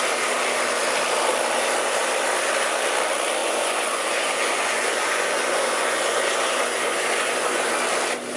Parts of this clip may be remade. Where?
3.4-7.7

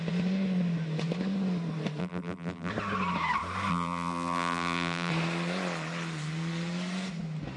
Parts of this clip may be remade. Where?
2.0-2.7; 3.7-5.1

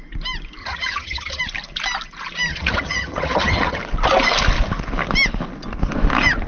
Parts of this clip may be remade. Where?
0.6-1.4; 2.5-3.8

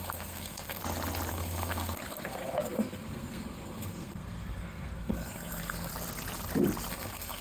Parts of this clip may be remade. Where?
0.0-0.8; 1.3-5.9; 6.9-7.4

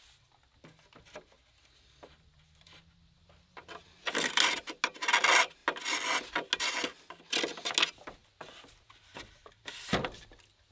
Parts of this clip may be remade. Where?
none

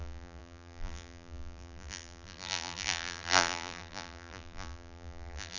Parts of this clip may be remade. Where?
0.0-5.6

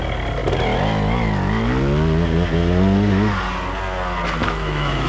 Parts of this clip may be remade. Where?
4.4-5.1